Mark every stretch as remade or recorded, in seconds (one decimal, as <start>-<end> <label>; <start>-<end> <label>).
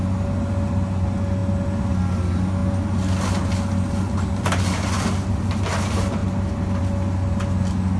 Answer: 0.0-8.0 recorded